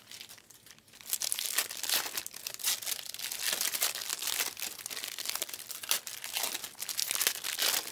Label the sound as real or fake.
real